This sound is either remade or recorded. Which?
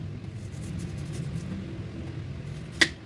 recorded